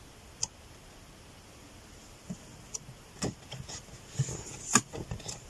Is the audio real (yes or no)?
yes